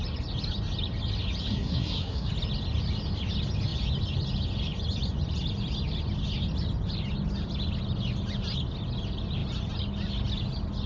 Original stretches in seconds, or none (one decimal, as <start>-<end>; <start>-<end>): 0.0-1.5; 2.3-10.9